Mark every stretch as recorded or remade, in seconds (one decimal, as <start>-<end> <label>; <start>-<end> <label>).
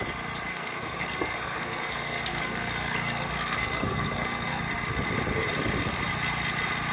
0.0-0.5 recorded; 0.5-4.6 remade; 4.6-6.9 recorded